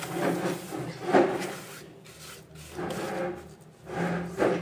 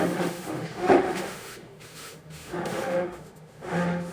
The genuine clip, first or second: first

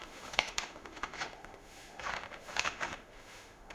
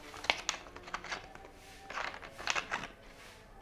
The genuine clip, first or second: second